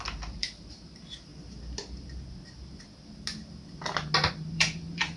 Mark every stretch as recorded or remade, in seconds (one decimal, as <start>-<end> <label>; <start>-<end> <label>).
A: 0.0-1.3 remade; 1.3-4.3 recorded; 4.3-5.2 remade